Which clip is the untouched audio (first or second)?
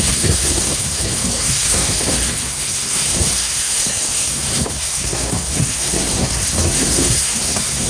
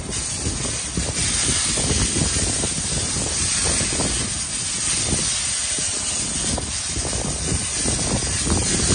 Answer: second